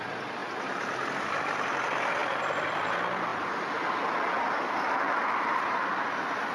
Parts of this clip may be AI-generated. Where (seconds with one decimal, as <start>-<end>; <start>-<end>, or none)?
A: none